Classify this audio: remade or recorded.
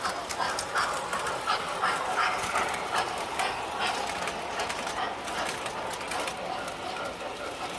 recorded